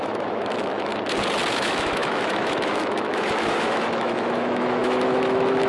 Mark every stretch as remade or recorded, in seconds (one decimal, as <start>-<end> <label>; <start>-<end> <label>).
0.0-0.9 remade; 0.9-1.5 recorded; 1.5-5.7 remade